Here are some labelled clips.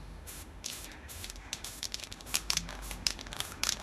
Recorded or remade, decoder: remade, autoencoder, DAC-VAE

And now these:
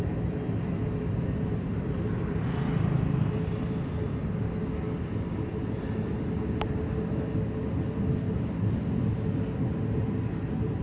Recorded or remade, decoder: recorded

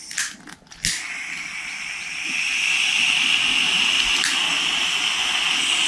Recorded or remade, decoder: recorded